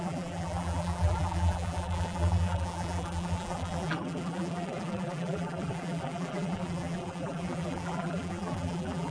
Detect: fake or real fake